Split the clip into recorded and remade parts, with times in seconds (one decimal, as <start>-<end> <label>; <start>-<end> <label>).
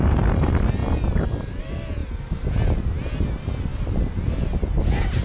0.0-5.2 recorded